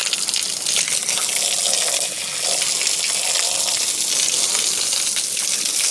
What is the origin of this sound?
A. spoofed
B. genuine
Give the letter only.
B